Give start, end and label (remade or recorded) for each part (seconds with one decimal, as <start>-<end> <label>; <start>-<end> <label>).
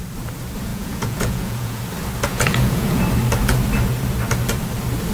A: 0.0-0.7 recorded; 0.7-1.8 remade; 1.8-2.3 recorded; 2.3-3.0 remade; 3.0-5.1 recorded